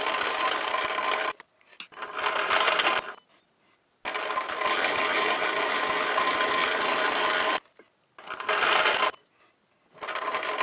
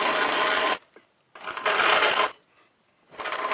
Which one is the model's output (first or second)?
second